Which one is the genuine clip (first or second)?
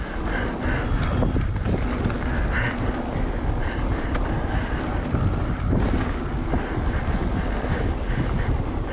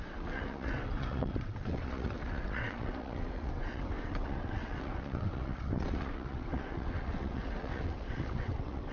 first